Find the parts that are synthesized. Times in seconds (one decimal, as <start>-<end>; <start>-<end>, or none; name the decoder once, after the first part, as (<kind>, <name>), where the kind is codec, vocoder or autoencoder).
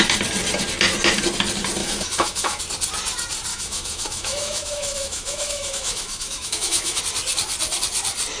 1.8-2.6 (autoencoder, DAC-VAE); 3.5-7.0